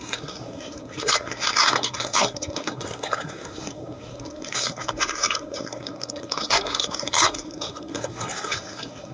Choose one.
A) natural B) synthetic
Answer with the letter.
B